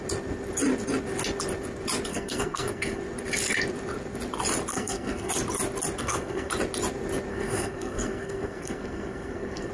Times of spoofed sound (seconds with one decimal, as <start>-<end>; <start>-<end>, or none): 2.1-3.0; 4.7-5.3; 6.0-6.5; 7.3-9.7